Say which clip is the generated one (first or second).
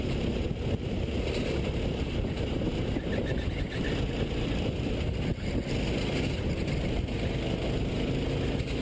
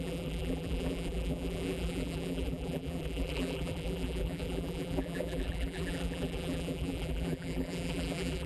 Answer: second